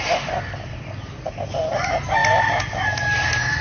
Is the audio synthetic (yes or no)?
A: no